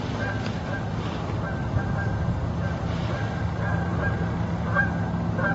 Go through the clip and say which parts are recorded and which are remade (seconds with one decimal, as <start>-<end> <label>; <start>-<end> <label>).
0.0-5.5 recorded